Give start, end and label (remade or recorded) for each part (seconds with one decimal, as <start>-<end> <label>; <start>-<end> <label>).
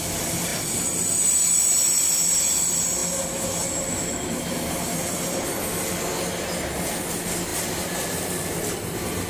0.0-9.3 recorded